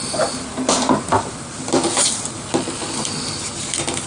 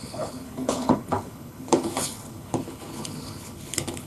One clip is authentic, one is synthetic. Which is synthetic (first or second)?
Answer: second